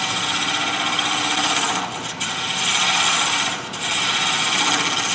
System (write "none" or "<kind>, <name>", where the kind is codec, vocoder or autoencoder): none